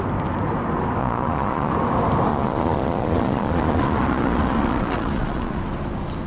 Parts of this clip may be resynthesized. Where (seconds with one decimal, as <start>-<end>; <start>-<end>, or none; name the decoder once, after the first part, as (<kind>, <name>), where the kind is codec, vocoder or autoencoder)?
1.0-1.7 (vocoder, Vocos); 2.3-5.6